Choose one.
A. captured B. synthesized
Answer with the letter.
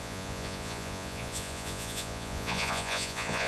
B